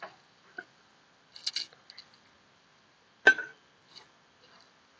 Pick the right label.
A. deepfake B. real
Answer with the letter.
B